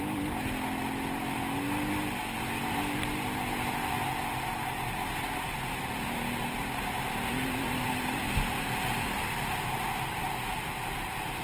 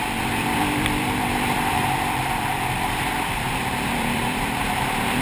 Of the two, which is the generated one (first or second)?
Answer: second